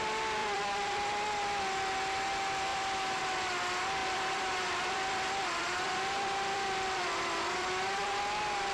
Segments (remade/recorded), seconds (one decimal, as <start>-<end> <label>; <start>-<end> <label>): 0.0-0.4 recorded; 0.4-1.1 remade; 1.1-2.7 recorded; 2.7-3.2 remade; 3.2-4.0 recorded; 4.0-8.2 remade; 8.2-8.7 recorded